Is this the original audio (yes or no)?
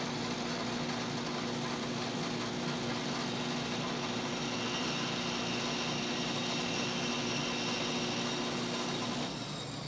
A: yes